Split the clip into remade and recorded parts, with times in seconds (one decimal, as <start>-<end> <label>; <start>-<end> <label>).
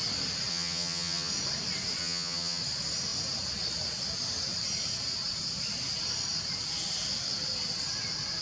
0.0-0.5 recorded; 0.5-1.3 remade; 1.3-2.0 recorded; 2.0-2.6 remade; 2.6-8.4 recorded